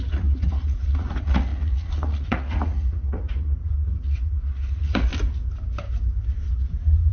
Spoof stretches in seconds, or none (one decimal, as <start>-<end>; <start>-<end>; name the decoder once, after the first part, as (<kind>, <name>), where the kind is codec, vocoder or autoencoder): 0.0-5.1 (vocoder, Vocos)